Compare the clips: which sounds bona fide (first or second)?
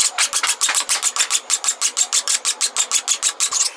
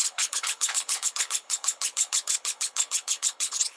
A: first